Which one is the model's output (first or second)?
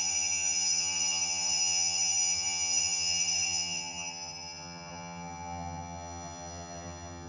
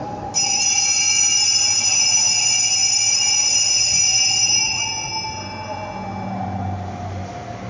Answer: first